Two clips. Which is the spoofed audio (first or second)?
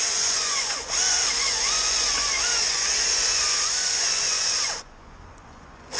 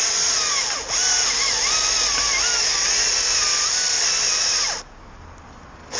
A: first